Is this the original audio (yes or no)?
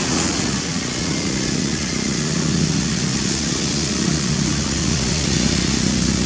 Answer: no